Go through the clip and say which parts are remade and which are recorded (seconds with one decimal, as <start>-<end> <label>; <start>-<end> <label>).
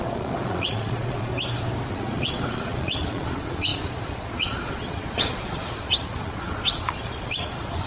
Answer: 0.0-1.3 remade; 1.3-1.9 recorded; 1.9-7.9 remade